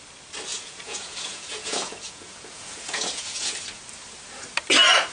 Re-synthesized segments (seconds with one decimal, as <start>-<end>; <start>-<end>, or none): 0.5-3.5